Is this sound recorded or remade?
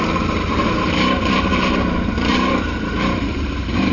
remade